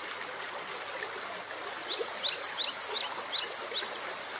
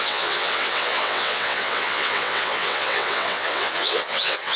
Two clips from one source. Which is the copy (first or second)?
second